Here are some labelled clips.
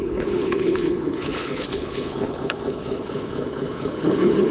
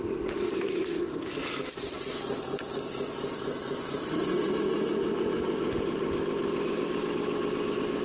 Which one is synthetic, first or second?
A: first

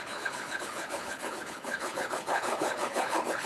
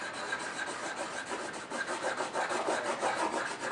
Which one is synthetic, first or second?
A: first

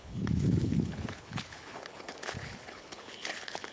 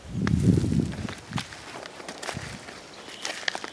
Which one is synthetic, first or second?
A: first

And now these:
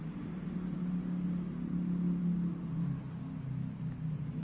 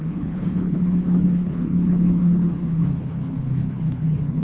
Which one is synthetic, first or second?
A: second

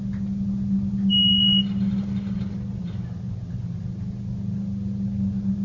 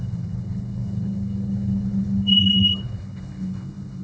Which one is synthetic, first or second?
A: second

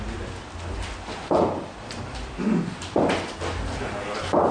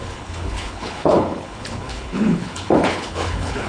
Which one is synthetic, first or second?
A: second